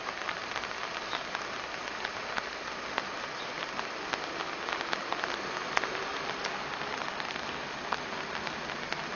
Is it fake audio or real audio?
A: real